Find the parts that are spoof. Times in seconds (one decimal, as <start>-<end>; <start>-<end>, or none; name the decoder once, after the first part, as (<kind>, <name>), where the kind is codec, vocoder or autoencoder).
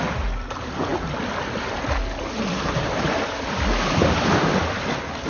none